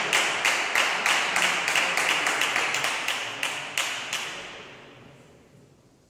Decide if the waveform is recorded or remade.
recorded